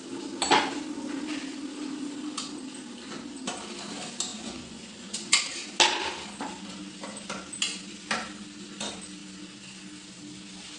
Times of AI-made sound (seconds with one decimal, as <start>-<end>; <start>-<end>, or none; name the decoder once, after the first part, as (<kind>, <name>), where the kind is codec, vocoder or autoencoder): 4.3-5.4 (vocoder, Vocos)